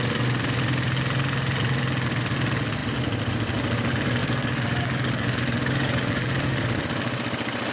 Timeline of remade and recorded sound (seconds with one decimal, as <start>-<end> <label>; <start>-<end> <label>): 0.0-4.2 recorded; 4.2-6.6 remade; 6.6-7.7 recorded